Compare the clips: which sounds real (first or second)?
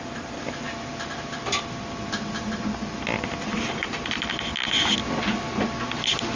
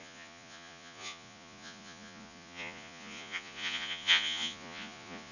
first